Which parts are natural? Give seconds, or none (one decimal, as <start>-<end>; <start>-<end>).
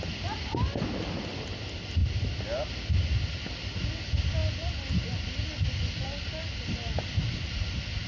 0.0-2.0; 2.7-8.1